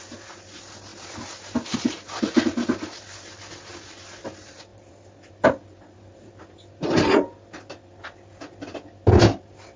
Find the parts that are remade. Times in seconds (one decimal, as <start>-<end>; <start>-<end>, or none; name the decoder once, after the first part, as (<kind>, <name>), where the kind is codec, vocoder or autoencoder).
none

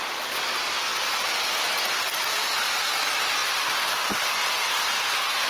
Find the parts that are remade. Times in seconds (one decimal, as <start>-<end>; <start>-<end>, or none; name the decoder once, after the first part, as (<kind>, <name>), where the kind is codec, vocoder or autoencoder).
none

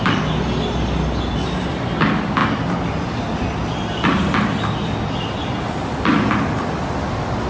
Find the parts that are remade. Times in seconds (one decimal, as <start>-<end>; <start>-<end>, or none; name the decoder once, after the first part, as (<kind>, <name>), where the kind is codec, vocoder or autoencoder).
none

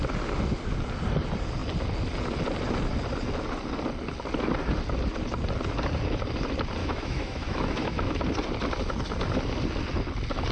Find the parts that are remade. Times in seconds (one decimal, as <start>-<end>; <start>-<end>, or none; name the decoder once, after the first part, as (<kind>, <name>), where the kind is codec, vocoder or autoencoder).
6.8-8.2 (autoencoder, DAC-VAE)

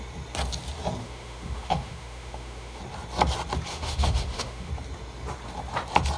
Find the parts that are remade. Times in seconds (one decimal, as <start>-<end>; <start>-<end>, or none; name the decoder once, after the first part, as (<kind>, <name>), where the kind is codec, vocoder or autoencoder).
1.0-2.8 (autoencoder, DAC-VAE); 3.7-4.7